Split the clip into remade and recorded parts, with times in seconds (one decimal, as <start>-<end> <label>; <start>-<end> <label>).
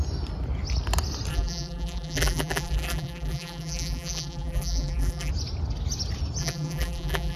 0.0-1.3 recorded; 1.3-5.3 remade; 5.3-6.4 recorded; 6.4-7.4 remade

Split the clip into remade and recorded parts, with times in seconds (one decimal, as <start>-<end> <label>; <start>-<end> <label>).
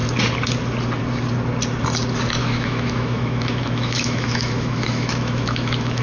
0.0-2.4 recorded; 2.4-6.0 remade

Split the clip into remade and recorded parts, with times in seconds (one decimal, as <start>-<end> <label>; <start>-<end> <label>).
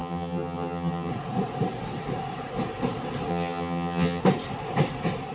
0.0-1.1 remade; 1.1-3.3 recorded; 3.3-4.2 remade; 4.2-5.3 recorded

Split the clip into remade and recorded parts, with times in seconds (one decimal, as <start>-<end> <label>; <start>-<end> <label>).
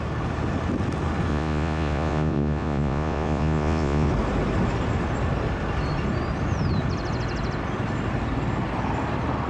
0.0-1.3 recorded; 1.3-4.1 remade; 4.1-9.5 recorded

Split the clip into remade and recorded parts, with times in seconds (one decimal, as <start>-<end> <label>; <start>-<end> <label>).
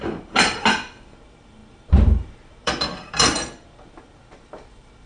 0.0-5.1 remade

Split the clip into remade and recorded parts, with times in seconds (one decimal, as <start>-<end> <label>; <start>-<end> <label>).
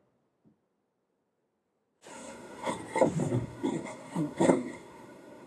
0.0-2.1 recorded; 2.1-2.7 remade; 2.7-3.2 recorded; 3.2-5.5 remade